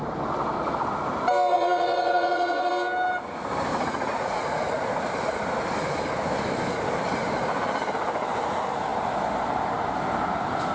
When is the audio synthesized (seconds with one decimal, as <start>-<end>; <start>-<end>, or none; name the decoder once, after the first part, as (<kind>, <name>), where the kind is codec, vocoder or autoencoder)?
1.5-2.7 (vocoder, Vocos); 3.7-5.1